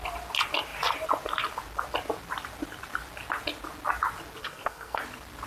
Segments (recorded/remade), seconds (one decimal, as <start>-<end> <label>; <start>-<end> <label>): 0.0-4.4 recorded; 4.4-5.0 remade; 5.0-5.5 recorded